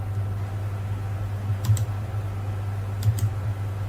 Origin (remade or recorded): recorded